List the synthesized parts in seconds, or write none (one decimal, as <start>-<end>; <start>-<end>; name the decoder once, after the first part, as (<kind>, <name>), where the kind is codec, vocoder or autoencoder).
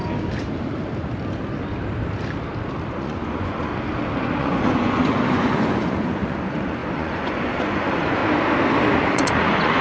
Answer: 2.9-3.7 (vocoder, Vocos); 4.4-8.2; 9.1-9.8